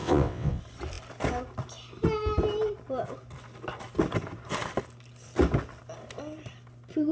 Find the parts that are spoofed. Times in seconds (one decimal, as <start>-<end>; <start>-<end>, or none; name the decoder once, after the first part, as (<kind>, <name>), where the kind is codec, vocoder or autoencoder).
0.0-0.6 (vocoder, WaveNeXt)